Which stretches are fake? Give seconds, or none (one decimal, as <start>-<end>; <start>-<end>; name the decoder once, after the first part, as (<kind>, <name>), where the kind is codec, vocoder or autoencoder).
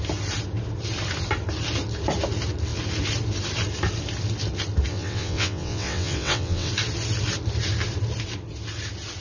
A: 4.9-6.7 (vocoder, WaveNeXt)